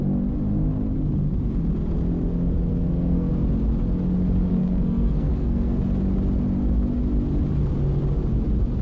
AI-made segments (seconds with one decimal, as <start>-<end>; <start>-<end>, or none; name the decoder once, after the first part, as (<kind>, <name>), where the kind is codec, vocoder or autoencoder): 2.7-3.3 (codec, SNAC); 4.5-5.8